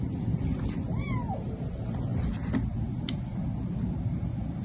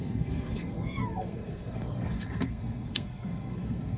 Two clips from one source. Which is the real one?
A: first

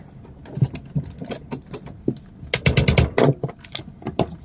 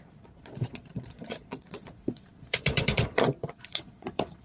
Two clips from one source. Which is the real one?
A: first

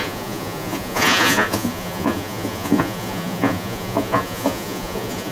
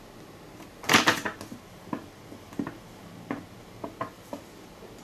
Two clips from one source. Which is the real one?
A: second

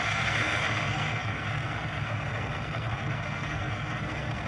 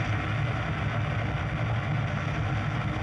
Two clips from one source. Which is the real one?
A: second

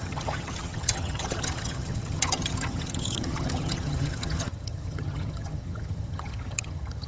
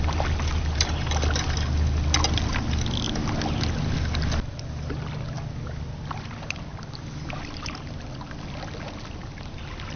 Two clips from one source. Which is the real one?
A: second